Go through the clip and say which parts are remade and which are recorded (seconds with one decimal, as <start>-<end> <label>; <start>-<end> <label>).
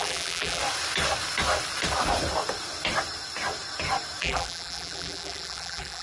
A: 0.0-0.6 remade; 0.6-4.2 recorded; 4.2-6.0 remade